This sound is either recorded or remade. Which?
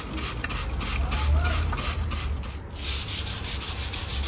recorded